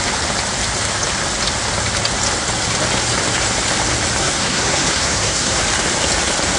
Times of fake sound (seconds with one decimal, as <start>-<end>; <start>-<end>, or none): 4.2-5.6